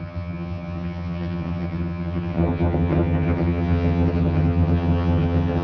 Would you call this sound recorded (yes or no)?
no